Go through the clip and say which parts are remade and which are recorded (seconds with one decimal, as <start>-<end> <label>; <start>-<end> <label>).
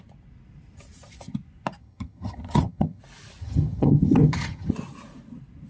0.0-1.8 recorded; 1.8-3.0 remade; 3.0-3.4 recorded; 3.4-4.7 remade; 4.7-5.7 recorded